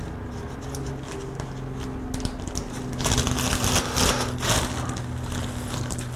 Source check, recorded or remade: recorded